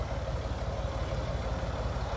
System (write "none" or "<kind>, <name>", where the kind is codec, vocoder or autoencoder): none